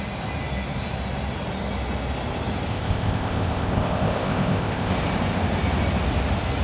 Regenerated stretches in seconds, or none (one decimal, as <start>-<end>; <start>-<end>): 2.7-4.9